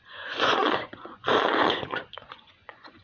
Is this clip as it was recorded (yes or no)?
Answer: no